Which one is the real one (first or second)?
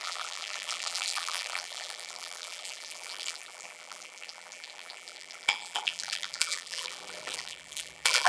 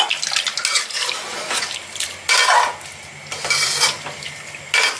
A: second